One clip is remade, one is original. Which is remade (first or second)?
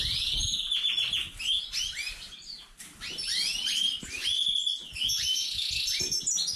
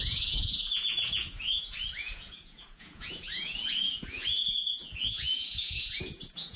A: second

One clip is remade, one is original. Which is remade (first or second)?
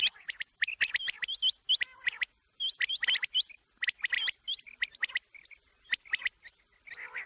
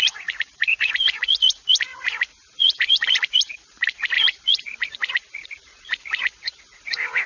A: second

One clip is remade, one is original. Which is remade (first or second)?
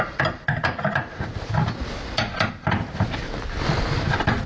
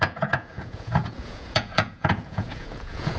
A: second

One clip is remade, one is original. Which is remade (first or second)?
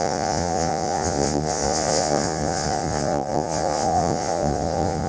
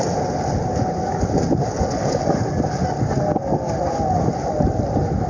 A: first